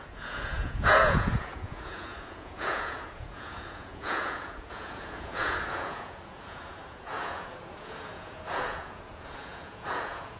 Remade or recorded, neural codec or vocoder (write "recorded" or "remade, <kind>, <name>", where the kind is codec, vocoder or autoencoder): remade, vocoder, Vocos